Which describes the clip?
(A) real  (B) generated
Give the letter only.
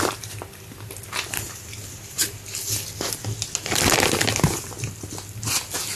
A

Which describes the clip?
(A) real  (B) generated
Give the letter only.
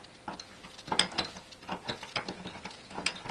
A